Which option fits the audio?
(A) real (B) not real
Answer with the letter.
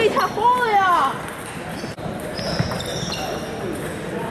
A